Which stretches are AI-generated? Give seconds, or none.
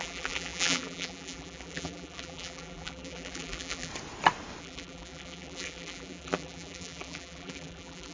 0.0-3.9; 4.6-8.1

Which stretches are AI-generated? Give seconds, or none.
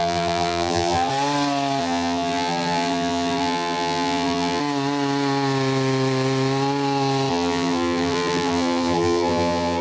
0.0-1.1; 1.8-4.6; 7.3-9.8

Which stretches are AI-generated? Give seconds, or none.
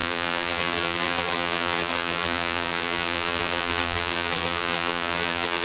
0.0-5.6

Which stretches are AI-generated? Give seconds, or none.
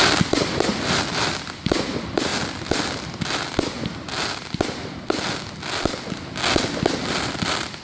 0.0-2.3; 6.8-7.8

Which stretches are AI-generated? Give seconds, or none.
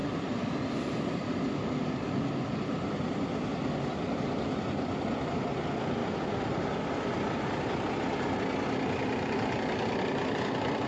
0.0-3.9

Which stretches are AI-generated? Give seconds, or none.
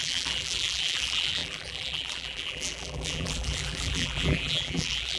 0.0-5.2